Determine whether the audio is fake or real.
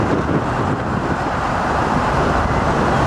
real